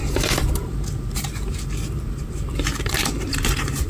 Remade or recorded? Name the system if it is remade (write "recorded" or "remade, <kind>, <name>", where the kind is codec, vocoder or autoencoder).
remade, vocoder, BigVGAN v2